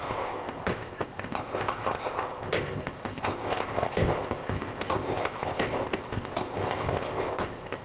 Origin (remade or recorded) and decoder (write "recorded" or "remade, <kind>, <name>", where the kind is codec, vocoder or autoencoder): remade, codec, ZipCodec